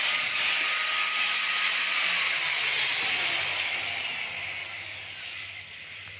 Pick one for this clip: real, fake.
real